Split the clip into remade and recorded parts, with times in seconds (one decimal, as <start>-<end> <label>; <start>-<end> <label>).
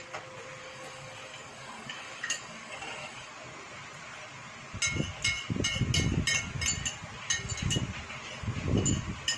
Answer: 0.0-0.6 recorded; 0.6-3.3 remade; 3.3-9.4 recorded